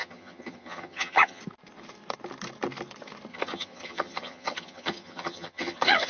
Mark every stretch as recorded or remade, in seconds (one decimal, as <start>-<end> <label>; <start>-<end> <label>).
0.0-1.4 remade; 1.4-3.3 recorded; 3.3-6.1 remade